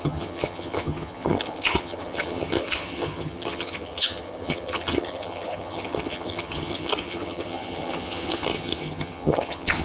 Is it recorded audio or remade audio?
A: remade